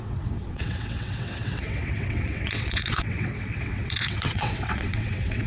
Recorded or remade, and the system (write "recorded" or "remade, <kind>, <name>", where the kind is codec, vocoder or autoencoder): remade, vocoder, WaveNeXt